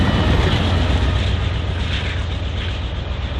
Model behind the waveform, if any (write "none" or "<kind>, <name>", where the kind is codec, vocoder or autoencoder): none